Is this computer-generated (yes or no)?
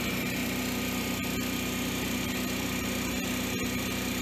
no